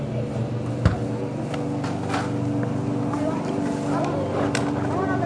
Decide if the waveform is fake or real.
real